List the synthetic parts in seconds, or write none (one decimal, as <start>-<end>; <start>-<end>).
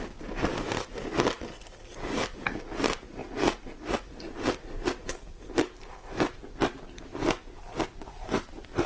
0.0-3.2; 7.6-8.9